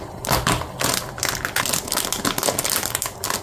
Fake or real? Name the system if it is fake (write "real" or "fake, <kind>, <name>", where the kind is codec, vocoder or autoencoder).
real